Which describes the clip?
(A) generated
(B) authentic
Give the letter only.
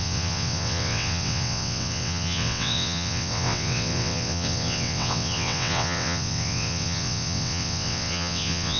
A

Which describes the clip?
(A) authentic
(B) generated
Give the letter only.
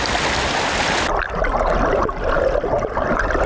A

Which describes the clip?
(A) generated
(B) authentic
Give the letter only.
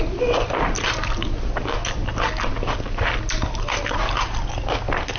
B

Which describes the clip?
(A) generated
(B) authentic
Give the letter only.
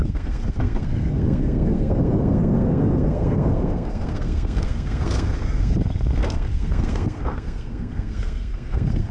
A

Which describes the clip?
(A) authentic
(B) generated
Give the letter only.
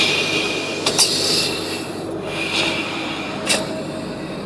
A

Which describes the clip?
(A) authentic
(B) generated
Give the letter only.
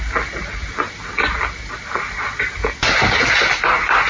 A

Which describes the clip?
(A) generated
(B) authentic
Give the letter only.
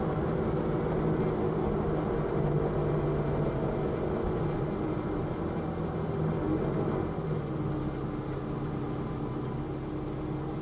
B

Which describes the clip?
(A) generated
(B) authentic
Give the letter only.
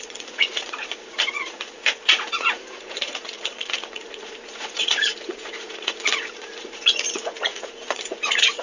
A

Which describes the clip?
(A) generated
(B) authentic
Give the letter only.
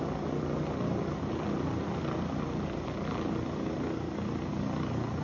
B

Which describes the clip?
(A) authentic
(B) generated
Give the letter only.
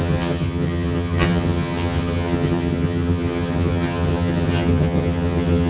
B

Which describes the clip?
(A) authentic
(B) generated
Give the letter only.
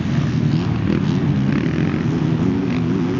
A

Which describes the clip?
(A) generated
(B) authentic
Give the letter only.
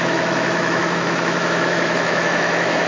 A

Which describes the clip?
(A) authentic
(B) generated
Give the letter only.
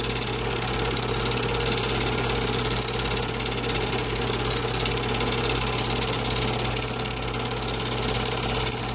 A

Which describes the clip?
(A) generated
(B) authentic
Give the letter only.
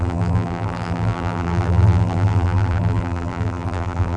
A